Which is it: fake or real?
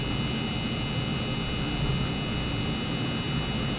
real